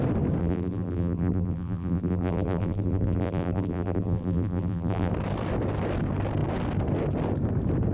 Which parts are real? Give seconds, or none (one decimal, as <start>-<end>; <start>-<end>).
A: 0.0-0.4; 5.1-7.9